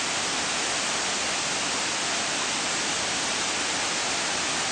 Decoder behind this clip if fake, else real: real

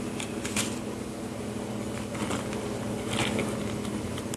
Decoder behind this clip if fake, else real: real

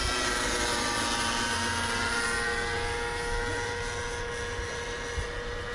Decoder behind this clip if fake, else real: real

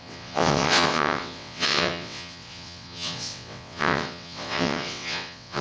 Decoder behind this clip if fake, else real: fake, vocoder, WaveNeXt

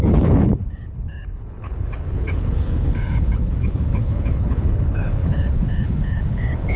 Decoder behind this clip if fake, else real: fake, codec, HILCodec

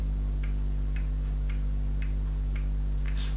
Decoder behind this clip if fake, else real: fake, vocoder, BigVGAN v2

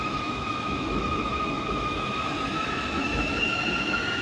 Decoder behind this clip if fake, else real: fake, autoencoder, DAC-VAE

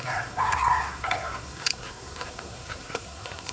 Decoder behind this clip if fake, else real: fake, codec, SNAC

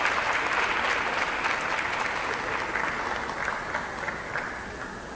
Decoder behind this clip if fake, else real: real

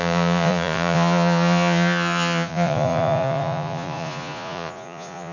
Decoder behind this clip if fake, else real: fake, vocoder, Vocos